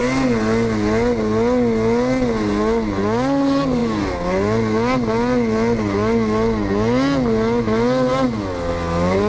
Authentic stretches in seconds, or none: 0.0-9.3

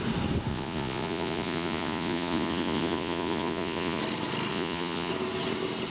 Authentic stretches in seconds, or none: 0.0-0.5; 4.0-4.5; 5.1-5.9

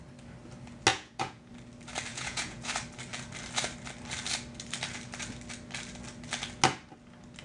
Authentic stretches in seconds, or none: 0.0-0.9; 1.5-2.1; 2.7-7.4

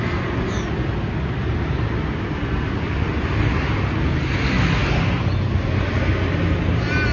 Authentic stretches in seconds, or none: 0.0-7.1

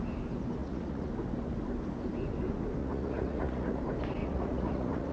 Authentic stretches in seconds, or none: 0.0-0.6; 1.1-2.8; 3.8-4.2

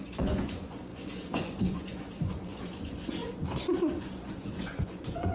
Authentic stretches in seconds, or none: 3.2-4.0

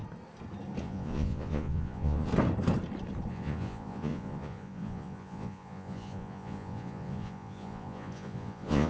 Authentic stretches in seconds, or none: 0.0-0.8; 2.3-3.3

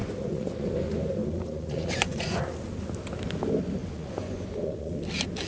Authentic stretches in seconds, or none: 0.7-1.2; 2.5-3.8; 5.0-5.5